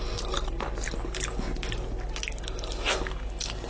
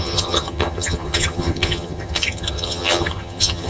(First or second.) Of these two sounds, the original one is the first